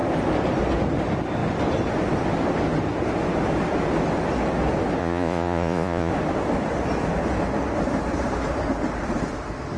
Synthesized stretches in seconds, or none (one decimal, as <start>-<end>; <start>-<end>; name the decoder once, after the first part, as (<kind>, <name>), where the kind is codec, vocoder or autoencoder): 5.0-6.1 (vocoder, Vocos)